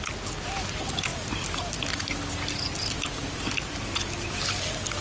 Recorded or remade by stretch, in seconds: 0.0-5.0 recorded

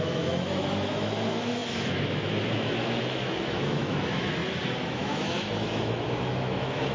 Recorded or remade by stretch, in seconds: 0.0-6.9 remade

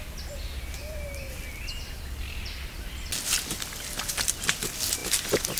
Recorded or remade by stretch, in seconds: 0.0-5.6 recorded

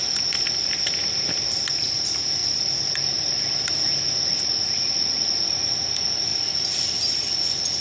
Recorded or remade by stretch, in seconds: 0.0-7.8 recorded

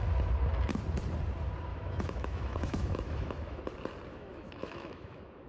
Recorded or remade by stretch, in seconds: 0.0-1.7 recorded; 1.7-3.6 remade; 3.6-4.1 recorded; 4.1-5.5 remade